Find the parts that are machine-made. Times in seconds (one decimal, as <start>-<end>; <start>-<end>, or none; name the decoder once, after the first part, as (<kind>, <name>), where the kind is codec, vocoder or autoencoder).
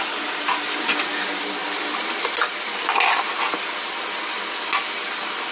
none